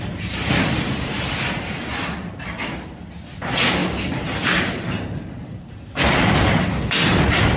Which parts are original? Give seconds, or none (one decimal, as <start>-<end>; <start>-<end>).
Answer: 0.0-7.6